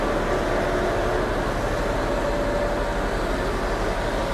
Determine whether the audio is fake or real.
real